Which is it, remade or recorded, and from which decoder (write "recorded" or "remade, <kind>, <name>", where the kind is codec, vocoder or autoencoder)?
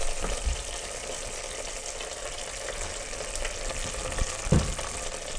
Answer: recorded